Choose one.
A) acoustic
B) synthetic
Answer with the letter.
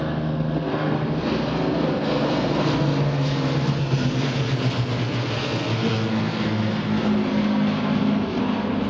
B